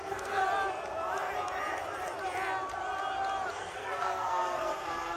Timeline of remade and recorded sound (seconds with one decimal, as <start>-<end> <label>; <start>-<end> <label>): 0.0-0.4 remade; 0.4-3.5 recorded; 3.5-5.2 remade